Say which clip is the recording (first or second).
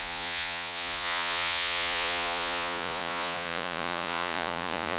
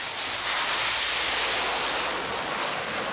second